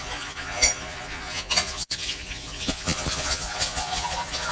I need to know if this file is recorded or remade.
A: remade